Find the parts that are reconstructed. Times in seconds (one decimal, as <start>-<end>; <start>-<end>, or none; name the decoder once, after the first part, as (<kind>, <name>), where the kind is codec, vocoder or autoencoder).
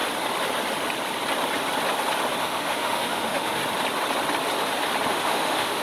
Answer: 2.4-3.6 (autoencoder, DAC-VAE); 5.1-5.8